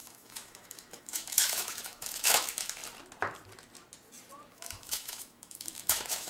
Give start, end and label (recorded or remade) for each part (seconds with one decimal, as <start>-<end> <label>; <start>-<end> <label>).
0.0-2.8 remade; 2.8-4.5 recorded; 4.5-6.3 remade